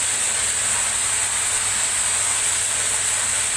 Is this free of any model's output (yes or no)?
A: yes